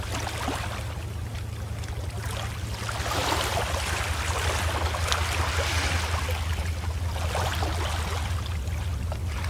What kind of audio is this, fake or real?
real